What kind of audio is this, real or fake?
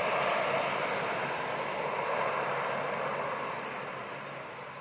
real